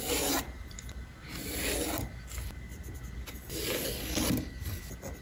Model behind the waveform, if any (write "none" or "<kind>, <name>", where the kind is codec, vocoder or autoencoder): none